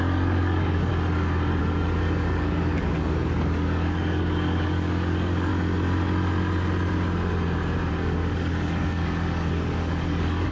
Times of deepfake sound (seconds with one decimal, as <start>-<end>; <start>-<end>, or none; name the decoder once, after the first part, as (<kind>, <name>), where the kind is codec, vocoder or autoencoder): 0.0-0.9 (codec, DAC); 1.6-5.5; 7.9-10.5